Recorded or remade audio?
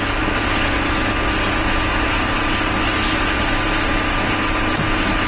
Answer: recorded